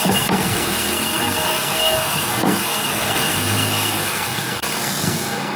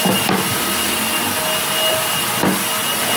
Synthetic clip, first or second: first